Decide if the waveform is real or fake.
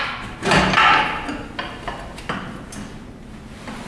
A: real